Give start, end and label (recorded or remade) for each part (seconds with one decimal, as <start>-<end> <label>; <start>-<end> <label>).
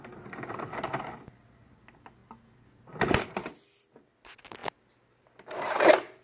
0.0-6.2 recorded